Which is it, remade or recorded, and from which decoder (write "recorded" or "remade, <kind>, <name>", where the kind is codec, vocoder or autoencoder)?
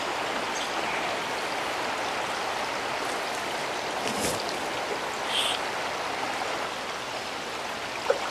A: recorded